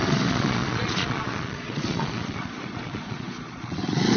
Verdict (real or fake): fake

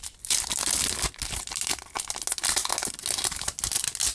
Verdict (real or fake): real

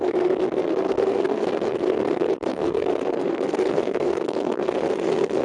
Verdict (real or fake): fake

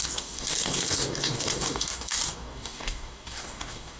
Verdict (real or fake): fake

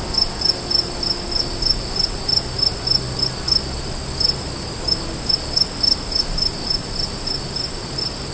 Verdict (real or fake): real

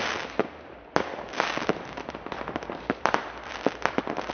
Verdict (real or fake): real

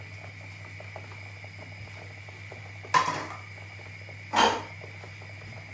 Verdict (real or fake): real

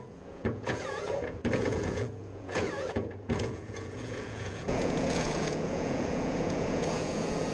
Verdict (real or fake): fake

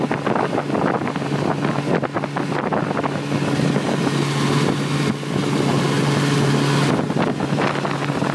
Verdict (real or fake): real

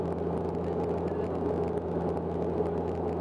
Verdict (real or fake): real